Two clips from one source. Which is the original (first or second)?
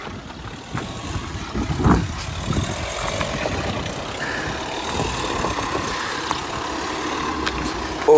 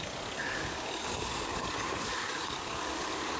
first